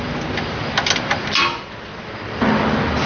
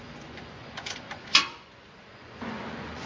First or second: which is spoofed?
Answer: second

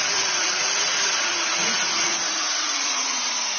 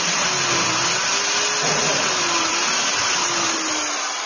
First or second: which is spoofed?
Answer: first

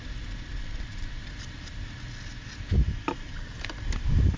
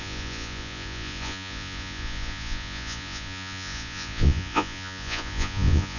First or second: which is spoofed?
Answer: second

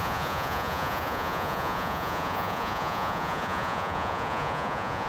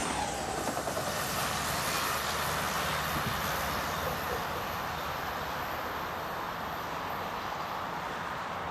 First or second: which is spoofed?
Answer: first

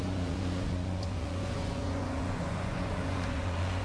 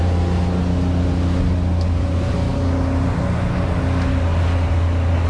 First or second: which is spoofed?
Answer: first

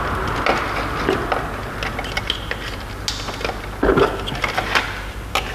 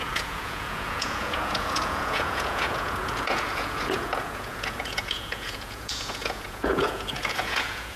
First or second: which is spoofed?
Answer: second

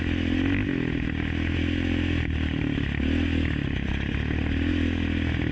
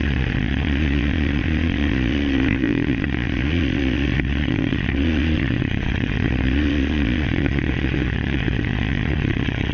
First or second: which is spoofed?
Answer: second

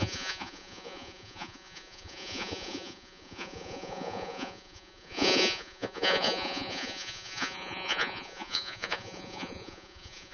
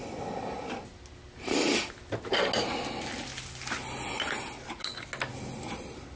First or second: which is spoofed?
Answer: first